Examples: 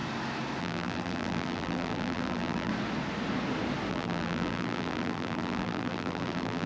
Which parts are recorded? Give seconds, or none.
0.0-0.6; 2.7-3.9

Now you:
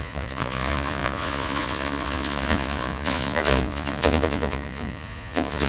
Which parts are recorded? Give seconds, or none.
none

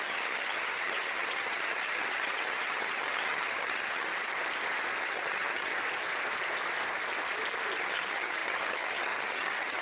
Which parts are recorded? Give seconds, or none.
4.1-5.0; 5.7-7.8

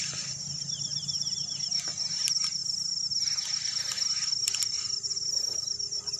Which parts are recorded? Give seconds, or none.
0.0-6.2

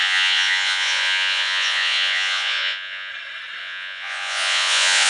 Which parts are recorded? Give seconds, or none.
3.1-3.6